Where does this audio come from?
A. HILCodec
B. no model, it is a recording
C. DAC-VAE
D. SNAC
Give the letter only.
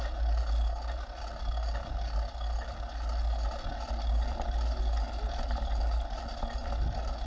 B